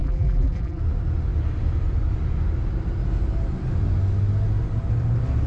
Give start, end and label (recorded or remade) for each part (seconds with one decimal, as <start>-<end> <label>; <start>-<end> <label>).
0.0-0.8 remade; 0.8-5.5 recorded

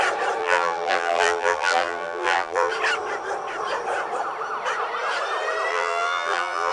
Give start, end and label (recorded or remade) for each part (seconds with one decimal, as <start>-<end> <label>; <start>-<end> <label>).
0.0-0.4 recorded; 0.4-2.7 remade; 2.7-5.7 recorded; 5.7-6.7 remade

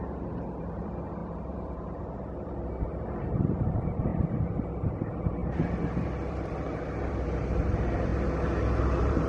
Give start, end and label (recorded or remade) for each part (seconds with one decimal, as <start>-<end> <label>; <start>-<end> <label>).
0.0-4.1 remade; 4.1-4.9 recorded; 4.9-8.1 remade; 8.1-8.8 recorded; 8.8-9.3 remade

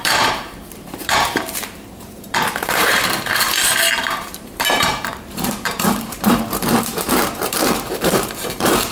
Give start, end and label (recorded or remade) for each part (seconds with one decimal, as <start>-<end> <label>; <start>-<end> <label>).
0.0-3.5 remade; 3.5-4.0 recorded; 4.0-8.9 remade

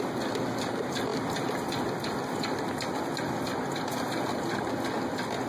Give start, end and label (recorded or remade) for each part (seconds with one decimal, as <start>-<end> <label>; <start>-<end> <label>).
0.0-5.5 recorded

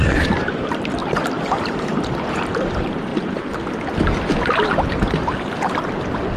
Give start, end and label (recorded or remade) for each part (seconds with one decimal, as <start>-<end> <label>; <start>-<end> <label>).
0.0-1.0 remade; 1.0-1.6 recorded; 1.6-3.1 remade; 3.1-6.4 recorded

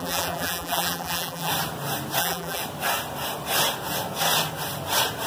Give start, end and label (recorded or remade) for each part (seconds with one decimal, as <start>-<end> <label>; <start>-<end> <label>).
0.0-1.5 remade; 1.5-2.2 recorded; 2.2-2.6 remade; 2.6-5.3 recorded